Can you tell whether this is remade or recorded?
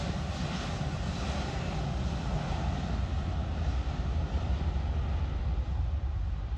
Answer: recorded